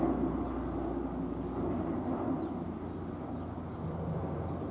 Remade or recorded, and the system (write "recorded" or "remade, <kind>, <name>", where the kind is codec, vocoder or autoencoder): recorded